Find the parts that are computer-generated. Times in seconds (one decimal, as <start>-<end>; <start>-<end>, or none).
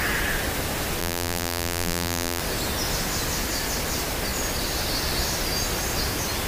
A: 1.0-2.4